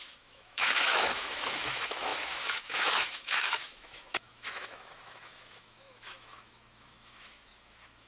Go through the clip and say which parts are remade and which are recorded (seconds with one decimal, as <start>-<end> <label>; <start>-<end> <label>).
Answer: 0.0-8.1 remade